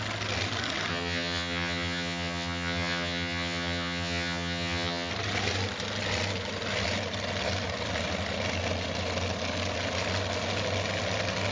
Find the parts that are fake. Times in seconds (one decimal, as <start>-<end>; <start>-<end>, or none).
0.9-5.1